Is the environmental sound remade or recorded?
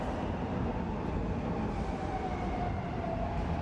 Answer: recorded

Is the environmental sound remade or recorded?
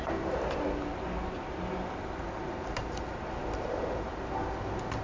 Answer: recorded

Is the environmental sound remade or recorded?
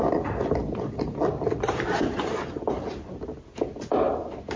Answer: recorded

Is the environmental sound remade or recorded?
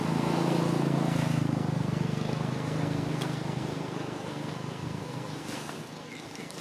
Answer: remade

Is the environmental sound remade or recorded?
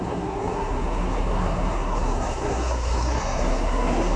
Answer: remade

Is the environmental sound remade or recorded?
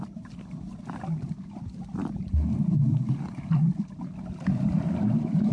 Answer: recorded